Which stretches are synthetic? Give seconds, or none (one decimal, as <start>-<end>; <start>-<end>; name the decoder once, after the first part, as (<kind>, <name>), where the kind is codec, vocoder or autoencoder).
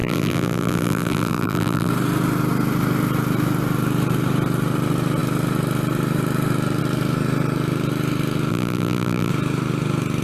0.0-1.9 (vocoder, BigVGAN v2); 8.5-9.3